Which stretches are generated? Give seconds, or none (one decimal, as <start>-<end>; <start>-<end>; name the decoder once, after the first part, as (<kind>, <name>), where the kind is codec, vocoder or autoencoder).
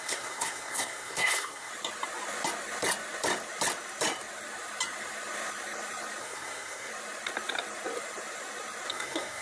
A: 0.0-1.7 (codec, SNAC); 6.2-6.9; 8.9-9.4